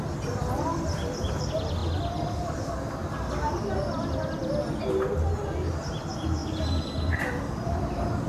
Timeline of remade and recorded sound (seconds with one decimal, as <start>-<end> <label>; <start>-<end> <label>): 0.0-1.8 remade; 1.8-3.3 recorded; 3.3-4.4 remade; 4.4-5.7 recorded; 5.7-6.4 remade; 6.4-7.1 recorded; 7.1-8.3 remade